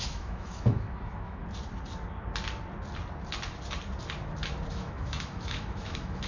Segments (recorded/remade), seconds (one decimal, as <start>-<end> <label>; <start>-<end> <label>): 0.0-1.4 remade; 1.4-4.7 recorded; 4.7-6.3 remade